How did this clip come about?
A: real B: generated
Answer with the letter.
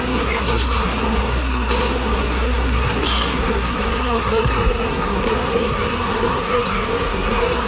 B